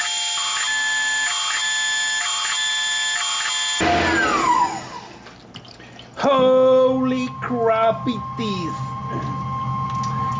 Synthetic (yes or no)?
no